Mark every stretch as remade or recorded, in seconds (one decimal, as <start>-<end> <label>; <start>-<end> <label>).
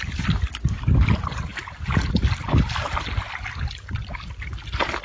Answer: 0.0-5.0 recorded